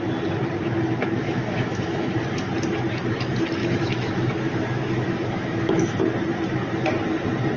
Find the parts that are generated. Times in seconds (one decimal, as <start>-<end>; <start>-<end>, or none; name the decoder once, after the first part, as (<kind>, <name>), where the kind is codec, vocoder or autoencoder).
1.2-2.1 (autoencoder, DAC-VAE); 3.6-6.0